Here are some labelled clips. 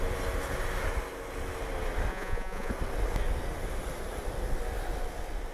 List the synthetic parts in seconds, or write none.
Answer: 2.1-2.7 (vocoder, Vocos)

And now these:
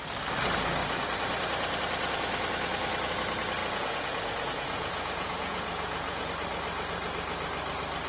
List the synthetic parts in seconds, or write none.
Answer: 3.6-6.3 (vocoder, Vocos)

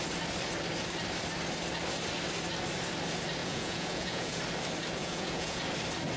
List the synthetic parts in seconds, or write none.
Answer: 3.4-4.4 (vocoder, Vocos); 5.0-5.6

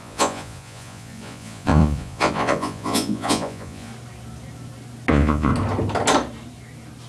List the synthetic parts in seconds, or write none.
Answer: 0.0-3.9 (vocoder, Vocos); 5.1-5.5